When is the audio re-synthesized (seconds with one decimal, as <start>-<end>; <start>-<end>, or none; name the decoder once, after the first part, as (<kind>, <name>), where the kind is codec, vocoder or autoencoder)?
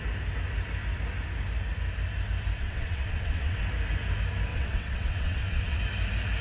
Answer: 2.6-3.6 (vocoder, WaveNeXt); 4.5-5.8